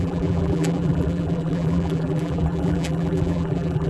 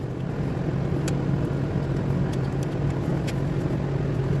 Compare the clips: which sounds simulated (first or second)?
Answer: first